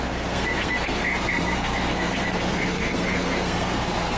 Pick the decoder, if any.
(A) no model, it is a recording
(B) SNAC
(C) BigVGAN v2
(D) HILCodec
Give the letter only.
B